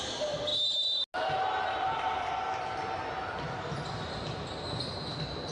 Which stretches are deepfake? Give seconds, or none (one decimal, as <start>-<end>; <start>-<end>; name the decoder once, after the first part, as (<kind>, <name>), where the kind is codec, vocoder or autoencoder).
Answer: none